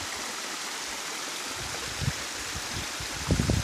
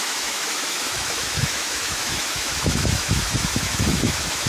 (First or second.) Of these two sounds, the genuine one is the first